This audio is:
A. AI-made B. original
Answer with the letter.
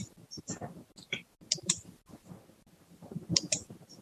B